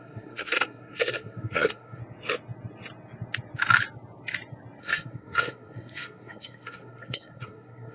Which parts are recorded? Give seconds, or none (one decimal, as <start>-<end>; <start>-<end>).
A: 2.0-4.8

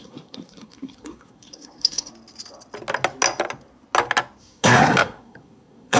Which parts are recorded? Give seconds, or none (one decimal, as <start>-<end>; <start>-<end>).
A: 2.1-4.4

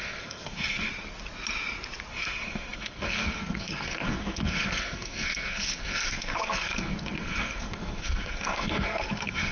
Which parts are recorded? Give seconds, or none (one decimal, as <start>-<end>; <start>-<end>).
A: 0.9-2.1

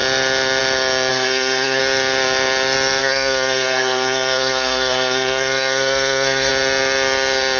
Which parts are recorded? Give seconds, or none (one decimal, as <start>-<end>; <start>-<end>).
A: 0.0-1.1; 1.8-3.0; 6.5-7.6

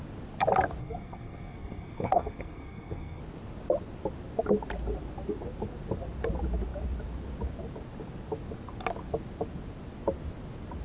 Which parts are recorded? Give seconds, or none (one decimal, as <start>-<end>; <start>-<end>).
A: 0.0-0.8; 3.2-10.8